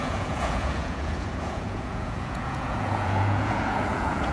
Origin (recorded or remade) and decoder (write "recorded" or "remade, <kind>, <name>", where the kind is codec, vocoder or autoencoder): remade, vocoder, Vocos